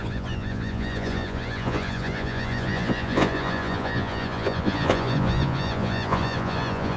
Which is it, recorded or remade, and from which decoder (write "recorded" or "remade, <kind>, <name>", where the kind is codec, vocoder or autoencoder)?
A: remade, vocoder, Vocos